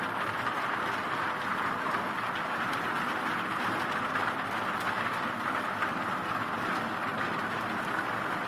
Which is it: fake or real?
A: real